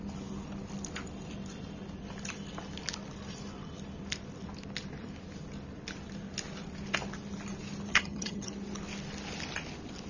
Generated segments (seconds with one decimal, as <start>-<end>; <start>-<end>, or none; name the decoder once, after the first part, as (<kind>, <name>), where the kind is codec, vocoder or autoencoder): 7.9-8.5 (vocoder, HiFi-GAN)